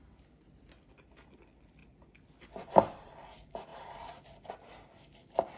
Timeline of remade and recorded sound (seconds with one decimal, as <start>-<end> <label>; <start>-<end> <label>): 0.0-3.7 recorded; 3.7-4.5 remade; 4.5-5.6 recorded